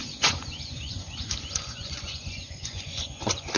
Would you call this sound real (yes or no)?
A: no